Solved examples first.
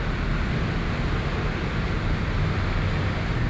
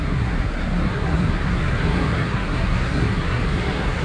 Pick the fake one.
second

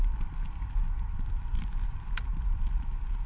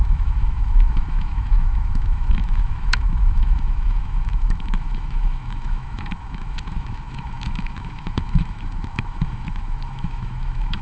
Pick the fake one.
second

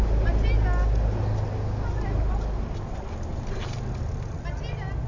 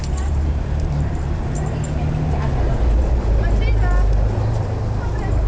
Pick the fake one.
second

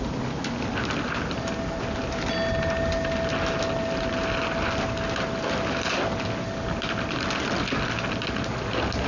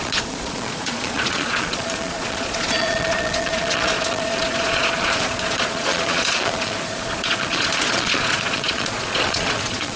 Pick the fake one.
second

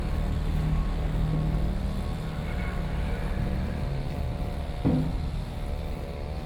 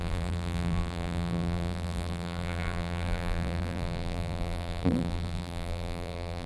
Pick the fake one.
second